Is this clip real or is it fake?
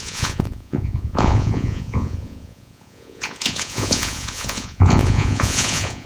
fake